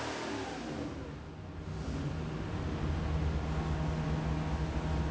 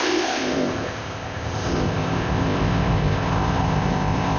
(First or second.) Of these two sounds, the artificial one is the second